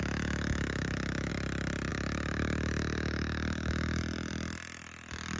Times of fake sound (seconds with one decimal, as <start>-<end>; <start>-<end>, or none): 0.0-1.3; 1.9-4.0